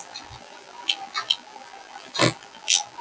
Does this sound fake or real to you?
fake